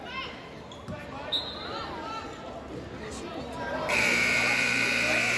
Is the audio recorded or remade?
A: recorded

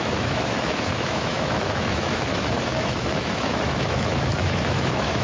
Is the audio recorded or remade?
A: remade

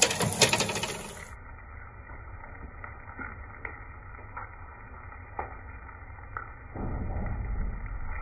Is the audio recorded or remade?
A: recorded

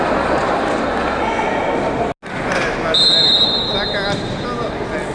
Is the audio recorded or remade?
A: recorded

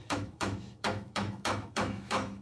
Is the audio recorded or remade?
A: remade